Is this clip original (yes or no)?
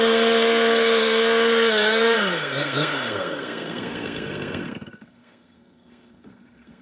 no